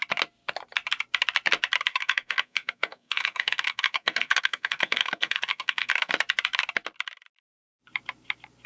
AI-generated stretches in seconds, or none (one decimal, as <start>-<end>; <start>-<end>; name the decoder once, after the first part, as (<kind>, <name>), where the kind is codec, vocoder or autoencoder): 1.9-6.1 (codec, SNAC)